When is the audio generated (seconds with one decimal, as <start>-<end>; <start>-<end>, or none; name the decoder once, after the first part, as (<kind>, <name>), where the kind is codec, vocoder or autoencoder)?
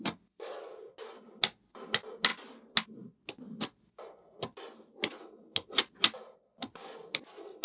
none